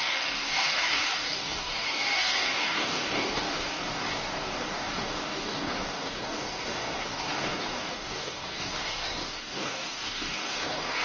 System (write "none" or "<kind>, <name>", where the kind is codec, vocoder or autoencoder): codec, DAC